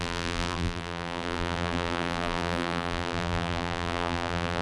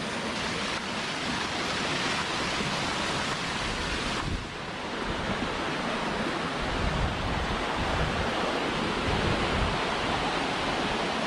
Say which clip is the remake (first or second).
first